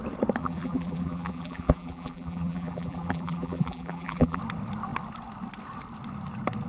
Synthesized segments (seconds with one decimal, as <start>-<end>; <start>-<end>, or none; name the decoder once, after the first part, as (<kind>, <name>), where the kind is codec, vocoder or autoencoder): 0.4-4.4 (vocoder, BigVGAN v2)